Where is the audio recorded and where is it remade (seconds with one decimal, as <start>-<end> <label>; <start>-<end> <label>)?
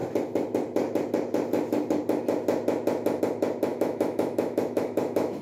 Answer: 0.0-3.7 recorded; 3.7-5.4 remade